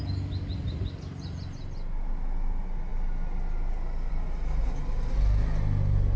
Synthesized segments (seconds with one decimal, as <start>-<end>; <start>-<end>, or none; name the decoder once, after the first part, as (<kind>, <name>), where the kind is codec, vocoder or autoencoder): none